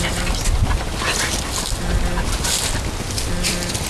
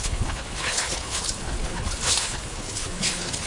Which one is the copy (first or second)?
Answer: second